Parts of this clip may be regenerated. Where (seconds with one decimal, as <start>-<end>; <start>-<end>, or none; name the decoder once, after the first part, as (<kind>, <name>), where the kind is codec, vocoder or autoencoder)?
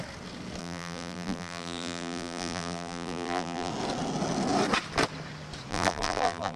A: 0.6-3.7 (vocoder, BigVGAN v2); 5.7-6.6